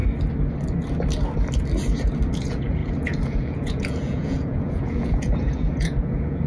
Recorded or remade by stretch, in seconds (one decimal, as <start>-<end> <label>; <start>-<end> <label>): 0.0-2.3 recorded; 2.3-6.5 remade